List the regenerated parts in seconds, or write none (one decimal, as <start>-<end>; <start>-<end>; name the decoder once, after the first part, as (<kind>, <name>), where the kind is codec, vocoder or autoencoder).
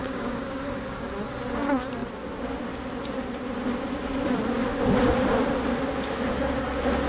0.0-1.1 (codec, DAC)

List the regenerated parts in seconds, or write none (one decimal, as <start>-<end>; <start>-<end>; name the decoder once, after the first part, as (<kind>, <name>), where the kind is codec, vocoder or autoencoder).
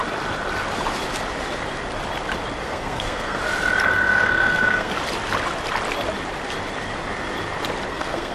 2.6-3.4 (codec, SNAC); 3.9-4.9; 7.9-8.3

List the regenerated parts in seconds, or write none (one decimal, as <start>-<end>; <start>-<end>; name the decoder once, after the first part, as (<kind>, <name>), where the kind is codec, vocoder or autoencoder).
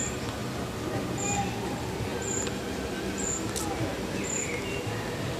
none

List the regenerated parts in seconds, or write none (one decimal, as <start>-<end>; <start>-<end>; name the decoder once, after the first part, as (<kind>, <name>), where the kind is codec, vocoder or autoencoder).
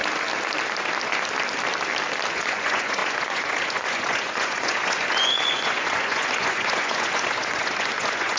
2.3-8.4 (vocoder, Vocos)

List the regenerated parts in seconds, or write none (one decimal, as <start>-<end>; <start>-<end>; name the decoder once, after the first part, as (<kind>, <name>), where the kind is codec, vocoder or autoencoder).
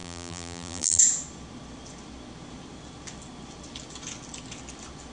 0.0-1.0 (vocoder, BigVGAN v2)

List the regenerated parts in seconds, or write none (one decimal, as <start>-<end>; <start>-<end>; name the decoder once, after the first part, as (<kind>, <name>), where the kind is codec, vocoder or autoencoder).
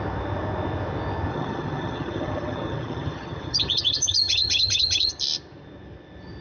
1.3-5.1 (vocoder, HiFi-GAN)